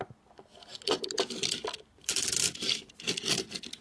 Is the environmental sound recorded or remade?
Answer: recorded